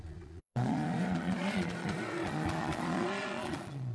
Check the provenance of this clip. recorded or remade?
remade